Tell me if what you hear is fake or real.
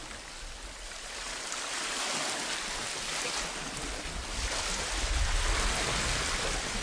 real